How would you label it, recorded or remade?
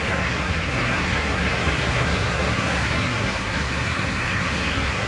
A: remade